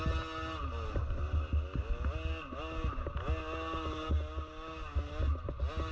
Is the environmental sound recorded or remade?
recorded